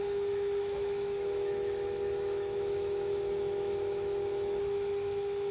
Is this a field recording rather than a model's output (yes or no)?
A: no